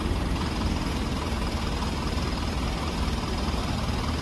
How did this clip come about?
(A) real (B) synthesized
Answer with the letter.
A